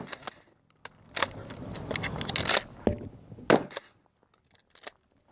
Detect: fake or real real